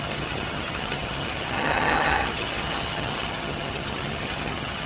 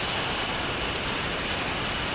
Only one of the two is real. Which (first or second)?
second